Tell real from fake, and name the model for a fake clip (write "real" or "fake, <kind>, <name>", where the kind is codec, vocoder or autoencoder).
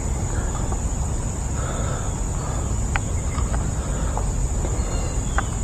real